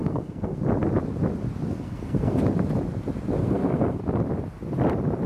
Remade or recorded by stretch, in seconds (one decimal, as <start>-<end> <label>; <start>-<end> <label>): 0.0-0.6 remade; 0.6-1.7 recorded; 1.7-2.4 remade; 2.4-3.4 recorded; 3.4-4.0 remade; 4.0-5.3 recorded